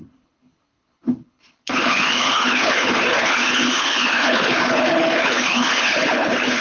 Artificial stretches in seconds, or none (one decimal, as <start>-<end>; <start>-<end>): 0.0-6.6